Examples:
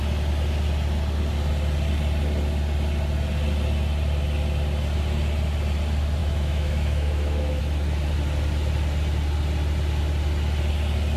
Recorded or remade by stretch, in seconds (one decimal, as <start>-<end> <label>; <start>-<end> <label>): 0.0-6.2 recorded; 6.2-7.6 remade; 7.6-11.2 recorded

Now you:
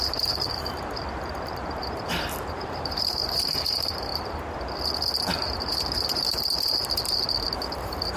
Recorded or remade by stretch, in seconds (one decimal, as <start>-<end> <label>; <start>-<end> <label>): 0.0-4.1 remade; 4.1-7.7 recorded; 7.7-8.2 remade

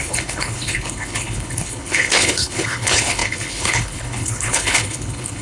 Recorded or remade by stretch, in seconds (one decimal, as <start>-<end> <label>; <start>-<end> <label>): 0.0-5.4 remade